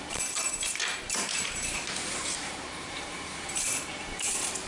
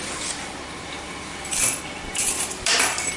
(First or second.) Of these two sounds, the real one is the second